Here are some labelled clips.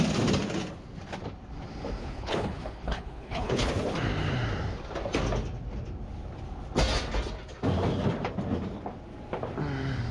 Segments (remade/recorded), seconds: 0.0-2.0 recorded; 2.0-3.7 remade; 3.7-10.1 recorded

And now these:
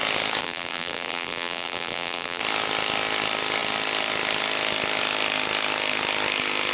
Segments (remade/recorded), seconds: 0.0-0.4 recorded; 0.4-2.4 remade; 2.4-6.7 recorded

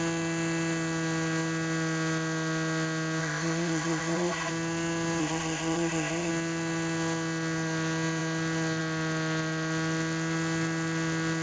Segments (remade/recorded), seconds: 0.0-3.2 recorded; 3.2-4.5 remade; 4.5-5.2 recorded; 5.2-6.3 remade; 6.3-11.4 recorded

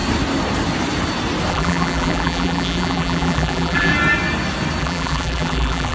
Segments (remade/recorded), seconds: 0.0-1.5 recorded; 1.5-3.9 remade; 3.9-4.8 recorded; 4.8-5.9 remade

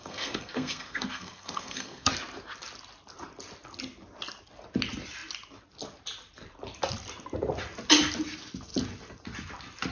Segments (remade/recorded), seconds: 0.0-2.1 remade; 2.1-9.9 recorded

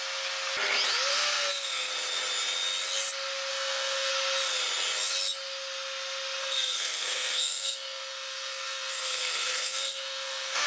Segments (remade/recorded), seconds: 0.0-1.1 recorded; 1.1-1.9 remade; 1.9-3.5 recorded; 3.5-4.1 remade; 4.1-6.4 recorded; 6.4-10.7 remade

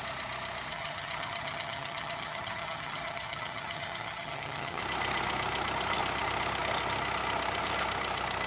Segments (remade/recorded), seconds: 0.0-0.7 recorded; 0.7-4.8 remade; 4.8-8.5 recorded

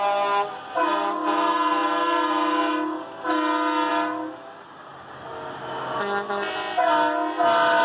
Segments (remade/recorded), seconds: 0.0-7.8 recorded